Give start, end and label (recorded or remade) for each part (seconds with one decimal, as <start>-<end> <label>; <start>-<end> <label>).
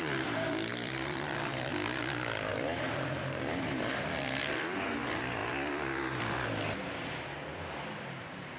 0.0-0.7 recorded; 0.7-2.0 remade; 2.0-2.5 recorded; 2.5-4.4 remade; 4.4-8.6 recorded